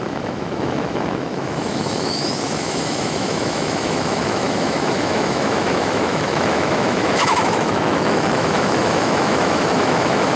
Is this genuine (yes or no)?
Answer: no